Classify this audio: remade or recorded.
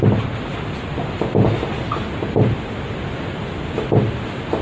recorded